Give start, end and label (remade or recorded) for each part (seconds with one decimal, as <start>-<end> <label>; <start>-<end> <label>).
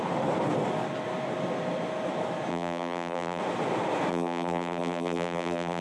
0.0-2.5 recorded; 2.5-3.4 remade; 3.4-4.1 recorded; 4.1-5.8 remade